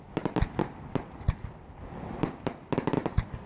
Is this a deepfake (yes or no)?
no